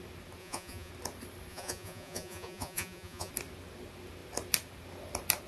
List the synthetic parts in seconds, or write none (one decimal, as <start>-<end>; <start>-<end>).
0.4-0.9; 1.5-3.3